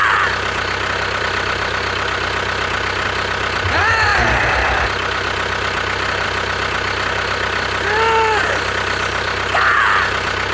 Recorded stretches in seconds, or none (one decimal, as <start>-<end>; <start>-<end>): 0.0-10.5